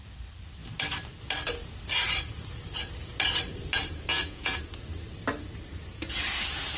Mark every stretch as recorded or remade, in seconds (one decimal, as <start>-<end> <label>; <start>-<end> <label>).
0.0-4.1 recorded; 4.1-4.6 remade; 4.6-6.8 recorded